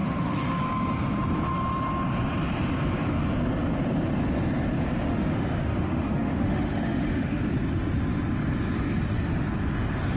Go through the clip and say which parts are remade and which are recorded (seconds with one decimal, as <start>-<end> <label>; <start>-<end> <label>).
0.0-0.6 remade; 0.6-5.1 recorded; 5.1-7.4 remade; 7.4-10.2 recorded